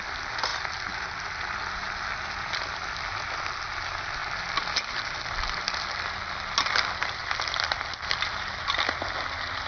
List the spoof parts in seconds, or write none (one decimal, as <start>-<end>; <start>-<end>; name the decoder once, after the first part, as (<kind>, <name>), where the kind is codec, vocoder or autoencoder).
none